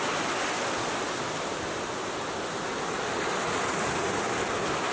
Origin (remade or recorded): recorded